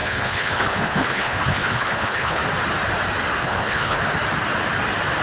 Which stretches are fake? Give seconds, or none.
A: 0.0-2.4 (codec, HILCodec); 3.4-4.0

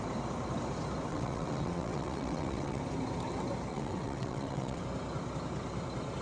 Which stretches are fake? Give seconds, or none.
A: 1.1-2.8 (vocoder, WaveNeXt); 3.7-4.8

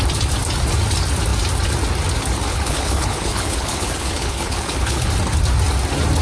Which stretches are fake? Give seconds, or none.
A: 2.5-5.1 (codec, HILCodec)

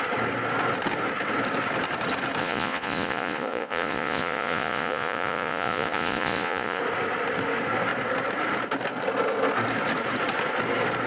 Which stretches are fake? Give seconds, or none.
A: 2.4-6.8 (vocoder, Vocos)

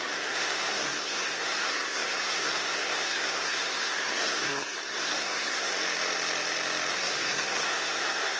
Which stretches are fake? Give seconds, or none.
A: 0.0-5.7 (codec, SNAC); 6.9-8.4